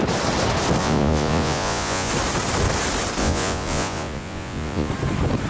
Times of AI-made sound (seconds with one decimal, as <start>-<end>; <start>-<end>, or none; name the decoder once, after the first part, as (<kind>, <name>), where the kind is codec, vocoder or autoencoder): 0.8-2.1 (vocoder, Vocos); 3.2-4.9